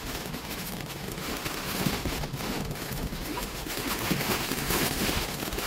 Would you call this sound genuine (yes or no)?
no